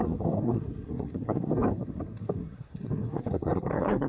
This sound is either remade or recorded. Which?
remade